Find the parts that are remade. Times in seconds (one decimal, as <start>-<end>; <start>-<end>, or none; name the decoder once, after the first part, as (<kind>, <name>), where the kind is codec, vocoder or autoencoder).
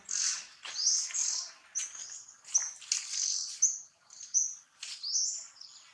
none